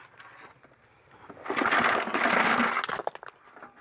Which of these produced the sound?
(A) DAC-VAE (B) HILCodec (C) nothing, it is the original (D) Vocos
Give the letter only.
C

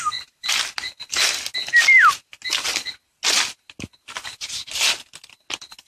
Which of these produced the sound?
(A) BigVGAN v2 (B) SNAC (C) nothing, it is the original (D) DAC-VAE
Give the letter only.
C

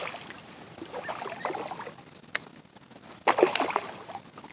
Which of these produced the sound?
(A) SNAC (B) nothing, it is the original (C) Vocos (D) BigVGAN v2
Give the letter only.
B